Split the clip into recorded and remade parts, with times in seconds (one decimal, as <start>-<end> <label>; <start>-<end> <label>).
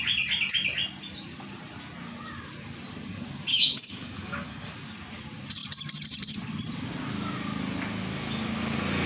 0.0-3.5 recorded; 3.5-4.7 remade; 4.7-9.1 recorded